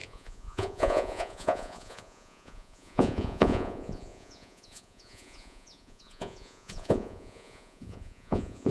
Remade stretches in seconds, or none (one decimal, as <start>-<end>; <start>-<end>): 0.0-8.7